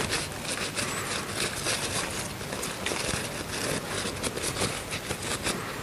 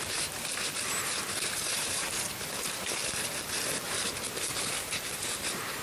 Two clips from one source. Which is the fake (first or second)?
second